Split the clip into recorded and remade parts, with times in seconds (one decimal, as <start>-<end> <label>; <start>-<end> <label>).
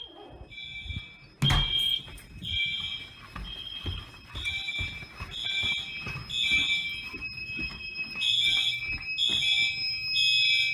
0.0-10.7 recorded